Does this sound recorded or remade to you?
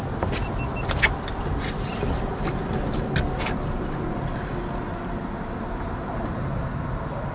recorded